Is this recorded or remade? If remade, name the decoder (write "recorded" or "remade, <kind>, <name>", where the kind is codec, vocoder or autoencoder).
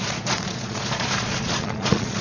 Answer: remade, vocoder, Vocos